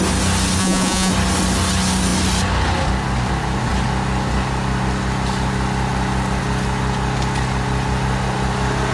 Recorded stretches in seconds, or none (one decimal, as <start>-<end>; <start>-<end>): 0.0-0.6; 1.1-8.9